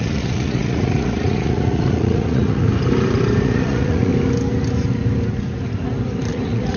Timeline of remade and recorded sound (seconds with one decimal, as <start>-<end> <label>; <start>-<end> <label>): 0.0-2.7 remade; 2.7-3.4 recorded; 3.4-4.1 remade; 4.1-6.3 recorded; 6.3-6.8 remade